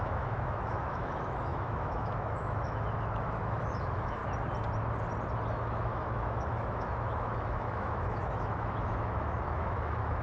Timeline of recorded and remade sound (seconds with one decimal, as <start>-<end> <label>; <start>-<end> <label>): 0.0-4.2 remade; 4.2-5.5 recorded; 5.5-10.2 remade

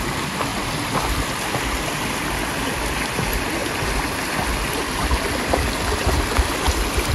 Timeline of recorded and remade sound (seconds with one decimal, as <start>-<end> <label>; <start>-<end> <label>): 0.0-7.1 recorded

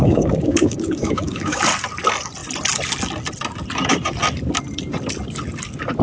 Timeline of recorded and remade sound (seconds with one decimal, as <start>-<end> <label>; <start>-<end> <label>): 0.0-1.6 remade; 1.6-6.0 recorded

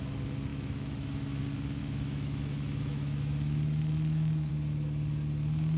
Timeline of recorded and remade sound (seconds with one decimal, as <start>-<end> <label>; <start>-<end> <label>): 0.0-0.5 recorded; 0.5-1.4 remade; 1.4-1.8 recorded; 1.8-4.5 remade; 4.5-5.8 recorded

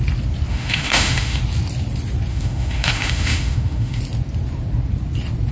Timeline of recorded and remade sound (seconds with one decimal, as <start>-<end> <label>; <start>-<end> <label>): 0.0-0.5 recorded; 0.5-1.4 remade; 1.4-2.3 recorded; 2.3-4.0 remade; 4.0-5.5 recorded

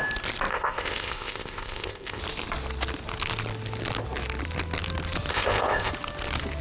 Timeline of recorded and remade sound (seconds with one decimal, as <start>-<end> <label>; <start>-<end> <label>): 0.0-0.5 recorded; 0.5-2.2 remade; 2.2-5.3 recorded; 5.3-5.9 remade; 5.9-6.6 recorded

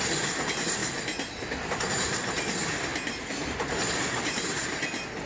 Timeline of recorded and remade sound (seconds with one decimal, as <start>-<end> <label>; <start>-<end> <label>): 0.0-5.3 recorded

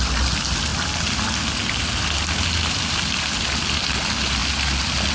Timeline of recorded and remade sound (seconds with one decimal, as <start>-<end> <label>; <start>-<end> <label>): 0.0-5.1 recorded